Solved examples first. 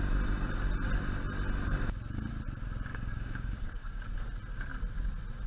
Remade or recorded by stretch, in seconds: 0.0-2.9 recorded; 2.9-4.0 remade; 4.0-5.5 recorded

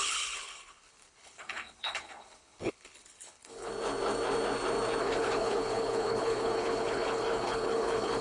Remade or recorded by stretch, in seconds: 0.0-3.7 remade; 3.7-5.0 recorded; 5.0-8.2 remade